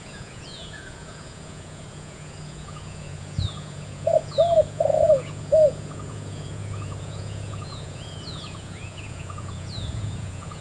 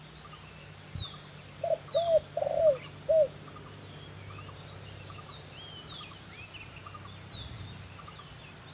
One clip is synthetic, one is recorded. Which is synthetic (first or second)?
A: first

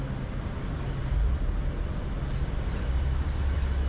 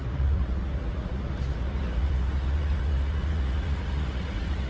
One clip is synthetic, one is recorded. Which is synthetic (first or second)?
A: second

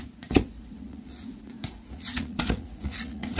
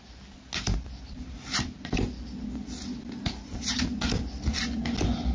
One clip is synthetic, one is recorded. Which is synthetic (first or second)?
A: first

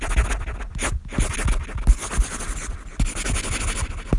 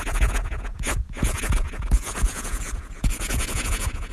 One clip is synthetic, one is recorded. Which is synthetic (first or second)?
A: second